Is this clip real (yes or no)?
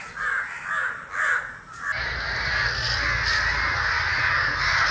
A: yes